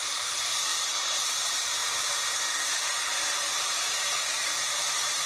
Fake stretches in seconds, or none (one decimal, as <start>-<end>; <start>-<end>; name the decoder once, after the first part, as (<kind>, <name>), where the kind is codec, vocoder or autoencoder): 0.0-0.7 (vocoder, BigVGAN v2); 1.4-1.8